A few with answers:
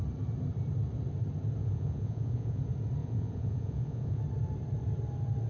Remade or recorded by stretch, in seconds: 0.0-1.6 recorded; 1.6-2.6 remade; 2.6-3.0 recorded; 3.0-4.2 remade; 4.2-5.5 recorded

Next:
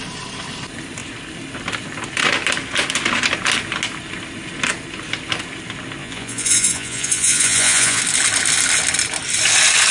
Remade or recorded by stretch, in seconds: 0.0-6.0 recorded; 6.0-8.0 remade; 8.0-9.9 recorded

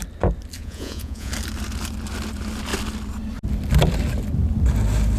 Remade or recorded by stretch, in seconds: 0.0-0.6 recorded; 0.6-1.3 remade; 1.3-5.2 recorded

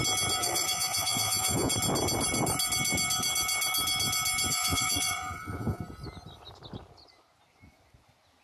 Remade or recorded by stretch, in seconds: 0.0-0.4 recorded; 0.4-1.7 remade; 1.7-4.5 recorded; 4.5-5.8 remade; 5.8-8.4 recorded